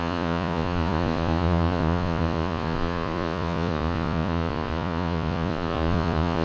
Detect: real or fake fake